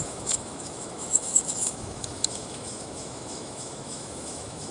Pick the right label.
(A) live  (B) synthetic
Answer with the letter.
B